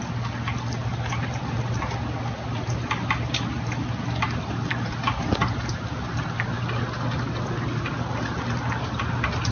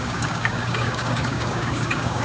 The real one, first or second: first